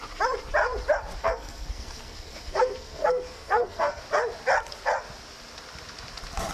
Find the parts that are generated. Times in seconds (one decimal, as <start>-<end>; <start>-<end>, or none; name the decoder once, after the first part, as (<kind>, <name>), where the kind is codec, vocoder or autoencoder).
1.2-4.0 (codec, SNAC)